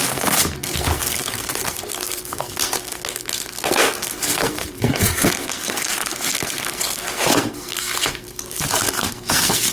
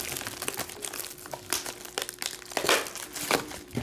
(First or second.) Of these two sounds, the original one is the second